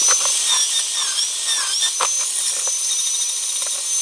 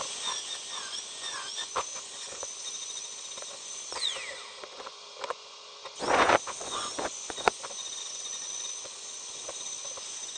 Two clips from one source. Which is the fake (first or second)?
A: second